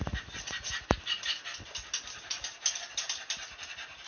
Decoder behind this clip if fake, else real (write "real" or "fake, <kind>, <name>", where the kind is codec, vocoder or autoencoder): real